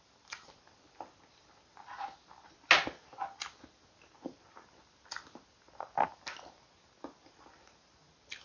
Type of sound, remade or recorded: recorded